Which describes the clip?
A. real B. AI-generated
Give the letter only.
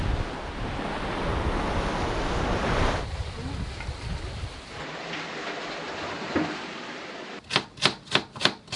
A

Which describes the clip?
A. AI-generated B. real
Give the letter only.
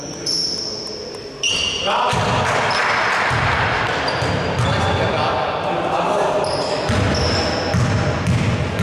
B